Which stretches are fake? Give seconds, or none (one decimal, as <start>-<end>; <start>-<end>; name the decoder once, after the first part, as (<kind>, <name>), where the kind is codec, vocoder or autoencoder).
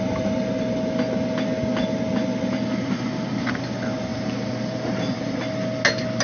4.1-5.4 (vocoder, BigVGAN v2)